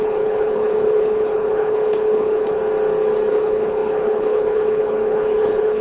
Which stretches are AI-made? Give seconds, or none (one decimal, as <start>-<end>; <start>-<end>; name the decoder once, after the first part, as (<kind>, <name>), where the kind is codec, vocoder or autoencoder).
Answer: 0.0-2.6 (codec, HILCodec); 3.3-5.8